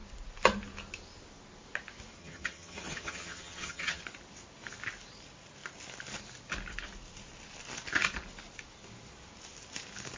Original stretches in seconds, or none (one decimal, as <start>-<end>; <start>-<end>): 0.0-2.2; 4.0-10.2